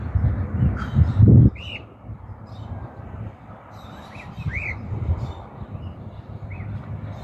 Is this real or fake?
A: real